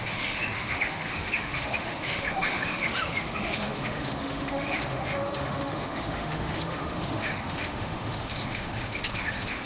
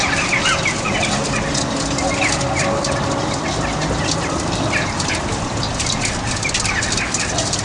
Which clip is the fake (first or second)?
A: first